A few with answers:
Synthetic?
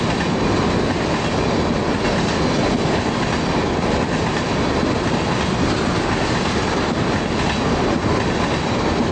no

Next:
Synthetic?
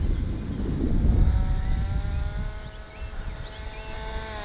no